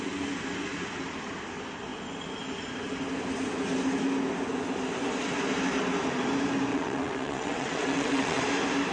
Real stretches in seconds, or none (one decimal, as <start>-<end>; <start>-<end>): 0.0-6.7; 8.4-8.9